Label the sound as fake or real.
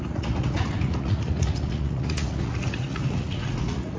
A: fake